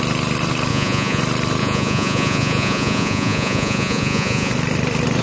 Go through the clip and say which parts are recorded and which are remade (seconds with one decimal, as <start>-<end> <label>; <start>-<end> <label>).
0.0-0.7 recorded; 0.7-1.2 remade; 1.2-1.6 recorded; 1.6-4.5 remade; 4.5-5.2 recorded

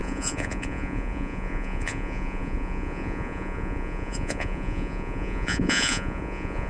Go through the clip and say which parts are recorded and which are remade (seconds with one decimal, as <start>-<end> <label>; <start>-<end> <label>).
0.0-6.7 remade

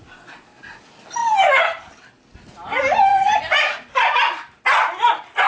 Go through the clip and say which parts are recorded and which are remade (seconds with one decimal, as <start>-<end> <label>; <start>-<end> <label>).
0.0-5.5 recorded

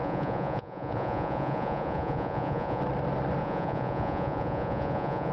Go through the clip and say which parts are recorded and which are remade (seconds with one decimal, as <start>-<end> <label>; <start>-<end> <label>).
0.0-2.8 remade; 2.8-3.4 recorded; 3.4-5.3 remade